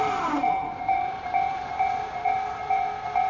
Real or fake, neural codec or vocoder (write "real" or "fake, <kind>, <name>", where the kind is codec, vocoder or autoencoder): fake, vocoder, BigVGAN v2